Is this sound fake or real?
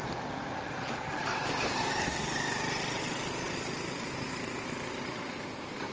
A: fake